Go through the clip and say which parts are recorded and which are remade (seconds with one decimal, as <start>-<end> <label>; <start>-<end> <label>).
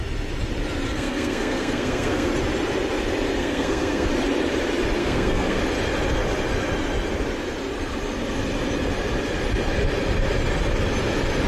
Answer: 0.0-0.9 recorded; 0.9-2.3 remade; 2.3-3.4 recorded; 3.4-4.1 remade; 4.1-5.0 recorded; 5.0-5.6 remade; 5.6-11.5 recorded